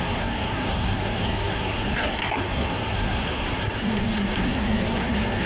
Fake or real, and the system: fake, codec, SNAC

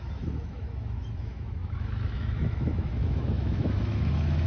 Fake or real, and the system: fake, autoencoder, DAC-VAE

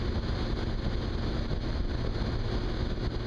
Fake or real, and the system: real